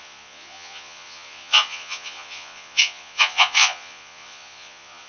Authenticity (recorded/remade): remade